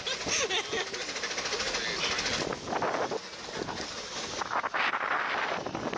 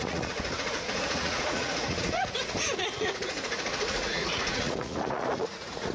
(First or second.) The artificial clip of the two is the second